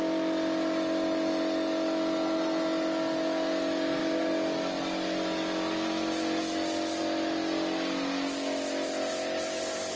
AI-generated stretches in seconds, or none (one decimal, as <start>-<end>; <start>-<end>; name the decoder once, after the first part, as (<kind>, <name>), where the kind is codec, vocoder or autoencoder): none